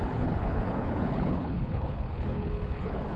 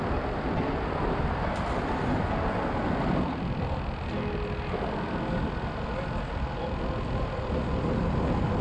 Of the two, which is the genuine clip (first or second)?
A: second